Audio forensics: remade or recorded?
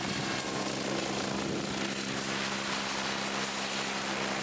recorded